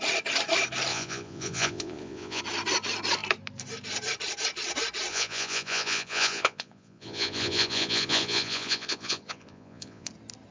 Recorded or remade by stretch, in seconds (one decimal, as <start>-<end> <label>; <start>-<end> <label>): 0.0-0.9 recorded; 0.9-2.4 remade; 2.4-5.1 recorded; 5.1-10.1 remade; 10.1-10.5 recorded